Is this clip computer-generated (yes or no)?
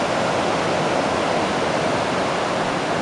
no